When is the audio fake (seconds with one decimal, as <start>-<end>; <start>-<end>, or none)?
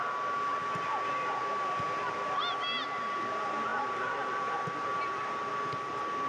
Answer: 3.7-5.5